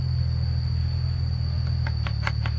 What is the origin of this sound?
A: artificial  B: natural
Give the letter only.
B